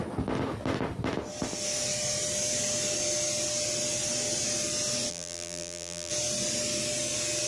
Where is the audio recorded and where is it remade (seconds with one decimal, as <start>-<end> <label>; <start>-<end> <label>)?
0.0-5.1 recorded; 5.1-6.1 remade; 6.1-7.5 recorded